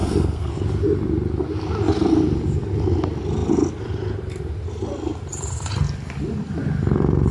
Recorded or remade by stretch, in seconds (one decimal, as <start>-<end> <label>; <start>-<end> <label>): 0.0-0.5 remade; 0.5-7.3 recorded